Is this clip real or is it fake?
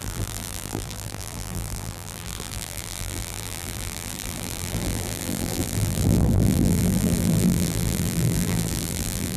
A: fake